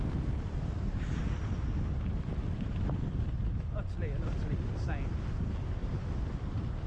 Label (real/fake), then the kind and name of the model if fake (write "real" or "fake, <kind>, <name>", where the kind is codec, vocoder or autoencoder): real